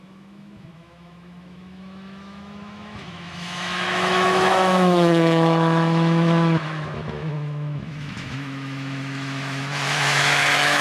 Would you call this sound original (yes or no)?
no